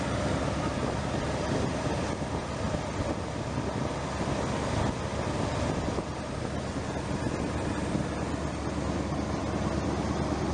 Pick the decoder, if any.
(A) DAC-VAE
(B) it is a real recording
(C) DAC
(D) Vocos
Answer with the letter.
B